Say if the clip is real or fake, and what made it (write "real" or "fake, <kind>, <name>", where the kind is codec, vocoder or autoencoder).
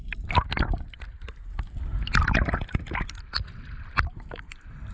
real